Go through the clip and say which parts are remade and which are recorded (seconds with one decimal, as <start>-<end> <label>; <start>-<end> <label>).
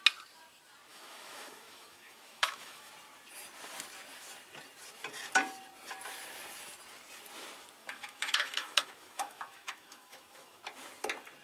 0.0-0.9 recorded; 0.9-2.9 remade; 2.9-7.8 recorded; 7.8-10.6 remade; 10.6-11.4 recorded